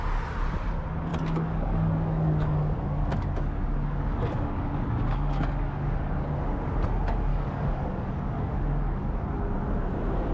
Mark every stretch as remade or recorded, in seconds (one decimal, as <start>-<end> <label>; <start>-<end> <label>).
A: 0.0-1.1 recorded; 1.1-6.3 remade; 6.3-7.3 recorded; 7.3-9.1 remade; 9.1-10.3 recorded